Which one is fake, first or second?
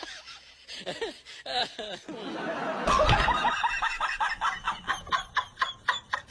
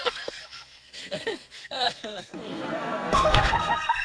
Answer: second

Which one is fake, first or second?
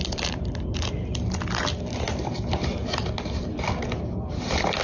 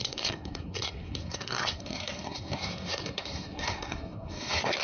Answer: second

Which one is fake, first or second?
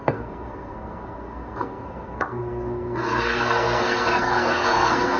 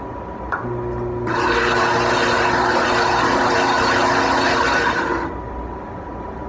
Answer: first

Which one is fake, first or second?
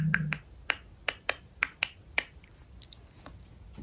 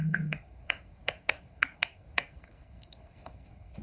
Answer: second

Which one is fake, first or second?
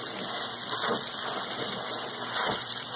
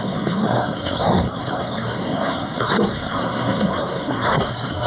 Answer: second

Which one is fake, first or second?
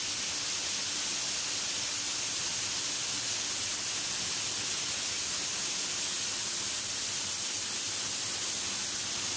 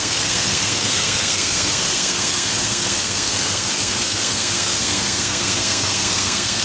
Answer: second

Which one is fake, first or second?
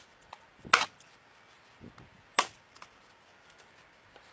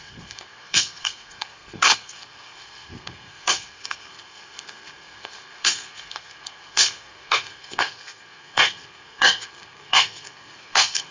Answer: second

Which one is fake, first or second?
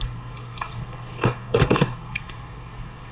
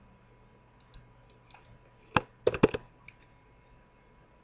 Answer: first